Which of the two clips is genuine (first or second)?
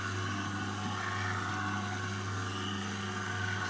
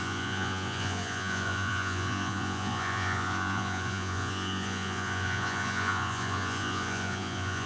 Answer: first